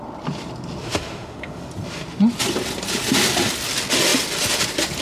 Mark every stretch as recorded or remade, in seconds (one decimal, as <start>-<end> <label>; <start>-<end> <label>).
0.0-0.8 recorded; 0.8-1.6 remade; 1.6-5.0 recorded